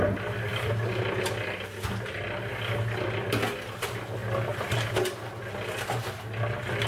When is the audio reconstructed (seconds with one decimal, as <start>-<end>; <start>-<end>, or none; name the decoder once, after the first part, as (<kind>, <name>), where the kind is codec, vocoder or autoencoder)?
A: none